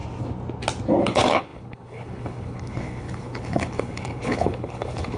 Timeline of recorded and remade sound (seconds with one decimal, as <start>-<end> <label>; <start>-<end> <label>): 0.0-1.0 recorded; 1.0-5.2 remade